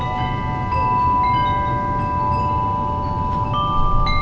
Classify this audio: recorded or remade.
recorded